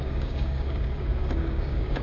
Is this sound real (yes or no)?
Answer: no